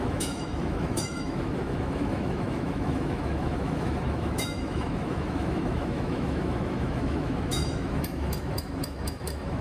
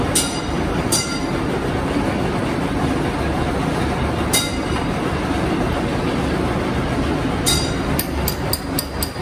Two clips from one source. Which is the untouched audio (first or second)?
second